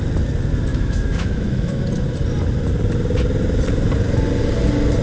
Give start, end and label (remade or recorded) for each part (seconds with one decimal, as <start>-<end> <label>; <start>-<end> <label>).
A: 0.0-0.7 recorded; 0.7-1.8 remade; 1.8-5.0 recorded